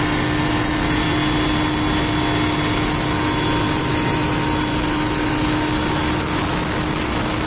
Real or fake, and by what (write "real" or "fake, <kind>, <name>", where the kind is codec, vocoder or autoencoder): real